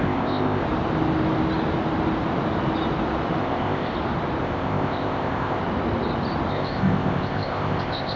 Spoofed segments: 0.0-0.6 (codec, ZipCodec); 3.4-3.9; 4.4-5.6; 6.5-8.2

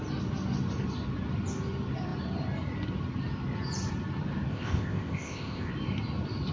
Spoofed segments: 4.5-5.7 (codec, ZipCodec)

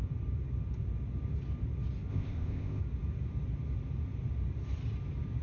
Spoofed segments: 2.1-2.8 (codec, ZipCodec)